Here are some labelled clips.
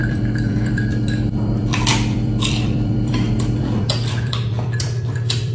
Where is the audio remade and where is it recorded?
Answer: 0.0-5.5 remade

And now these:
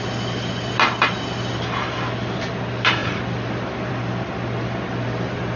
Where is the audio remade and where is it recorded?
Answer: 0.0-5.6 recorded

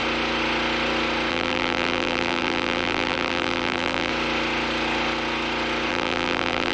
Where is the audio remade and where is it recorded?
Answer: 0.0-1.3 recorded; 1.3-4.1 remade; 4.1-5.9 recorded; 5.9-6.7 remade

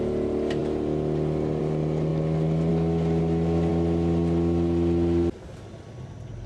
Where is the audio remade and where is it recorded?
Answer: 0.0-0.6 recorded; 0.6-1.6 remade; 1.6-6.5 recorded

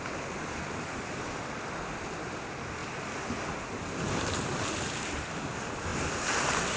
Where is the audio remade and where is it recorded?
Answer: 0.0-2.8 recorded; 2.8-4.6 remade; 4.6-5.9 recorded; 5.9-6.8 remade

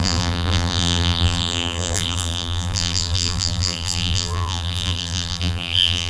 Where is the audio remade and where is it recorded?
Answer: 0.0-6.1 remade

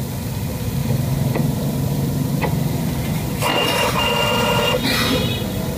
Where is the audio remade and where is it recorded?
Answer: 0.0-0.8 recorded; 0.8-2.5 remade; 2.5-3.5 recorded; 3.5-4.1 remade; 4.1-5.8 recorded

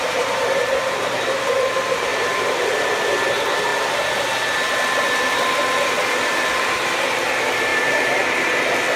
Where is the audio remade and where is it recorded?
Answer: 0.0-2.1 recorded; 2.1-3.2 remade; 3.2-7.7 recorded; 7.7-8.2 remade; 8.2-9.0 recorded